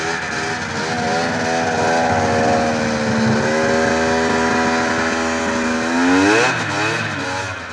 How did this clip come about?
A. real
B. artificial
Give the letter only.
A